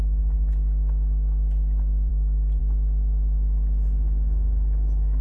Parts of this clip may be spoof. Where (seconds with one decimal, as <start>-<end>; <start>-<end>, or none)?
none